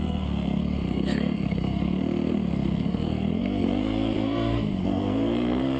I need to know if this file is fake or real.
fake